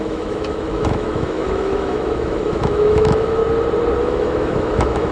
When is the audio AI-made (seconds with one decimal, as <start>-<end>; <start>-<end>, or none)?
0.0-3.4; 4.0-5.1